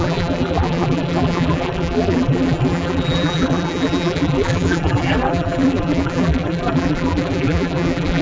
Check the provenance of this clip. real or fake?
fake